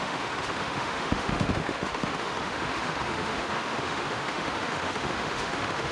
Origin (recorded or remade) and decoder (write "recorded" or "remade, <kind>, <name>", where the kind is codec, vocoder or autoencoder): remade, autoencoder, DAC-VAE